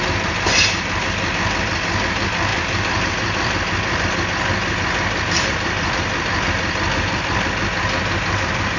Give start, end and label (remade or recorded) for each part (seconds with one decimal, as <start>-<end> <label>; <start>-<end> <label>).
0.0-2.5 recorded; 2.5-4.1 remade; 4.1-5.5 recorded; 5.5-7.6 remade; 7.6-8.8 recorded